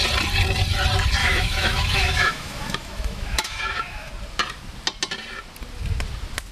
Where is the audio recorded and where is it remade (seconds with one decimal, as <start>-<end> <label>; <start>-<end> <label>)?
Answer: 0.0-1.2 recorded; 1.2-4.1 remade; 4.1-6.5 recorded